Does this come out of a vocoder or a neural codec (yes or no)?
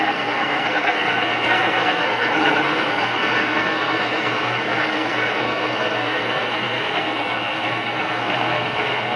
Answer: yes